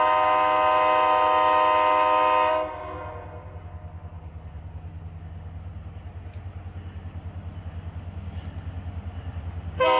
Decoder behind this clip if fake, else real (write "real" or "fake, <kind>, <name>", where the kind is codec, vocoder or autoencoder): real